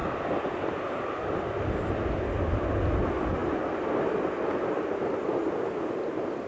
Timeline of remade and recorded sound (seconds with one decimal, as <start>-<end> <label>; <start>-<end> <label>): 0.0-6.5 recorded